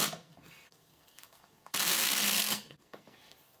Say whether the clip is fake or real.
fake